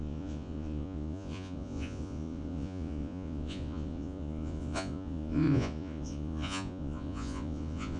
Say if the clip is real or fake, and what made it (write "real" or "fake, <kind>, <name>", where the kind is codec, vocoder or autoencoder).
fake, vocoder, Vocos